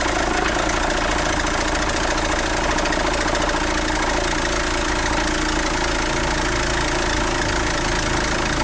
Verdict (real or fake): real